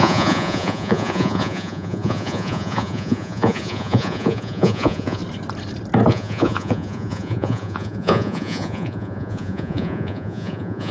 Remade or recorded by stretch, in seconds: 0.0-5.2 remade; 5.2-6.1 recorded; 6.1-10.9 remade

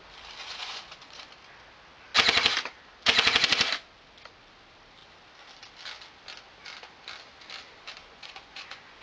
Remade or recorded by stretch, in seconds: 0.0-0.4 recorded; 0.4-1.3 remade; 1.3-8.0 recorded; 8.0-9.0 remade

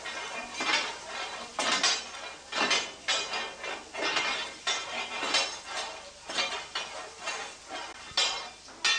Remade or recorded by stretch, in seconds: 0.0-9.0 recorded

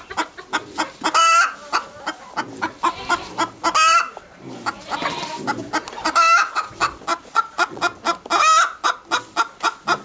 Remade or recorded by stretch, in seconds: 0.0-7.1 recorded; 7.1-7.8 remade; 7.8-10.0 recorded

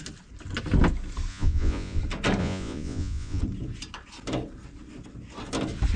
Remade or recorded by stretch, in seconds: 0.0-1.3 recorded; 1.3-2.0 remade; 2.0-2.4 recorded; 2.4-3.4 remade; 3.4-6.0 recorded